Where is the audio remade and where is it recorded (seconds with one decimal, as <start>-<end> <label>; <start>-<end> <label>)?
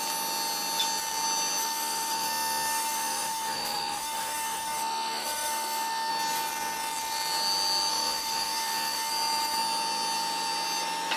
0.0-1.6 recorded; 1.6-6.1 remade; 6.1-7.9 recorded; 7.9-9.1 remade; 9.1-11.2 recorded